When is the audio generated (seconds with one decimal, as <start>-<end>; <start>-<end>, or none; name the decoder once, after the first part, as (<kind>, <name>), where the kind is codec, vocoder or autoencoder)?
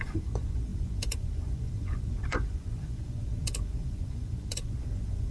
0.0-5.3 (vocoder, Vocos)